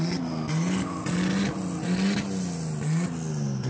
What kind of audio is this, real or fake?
real